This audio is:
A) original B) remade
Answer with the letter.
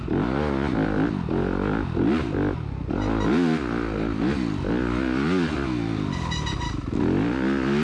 A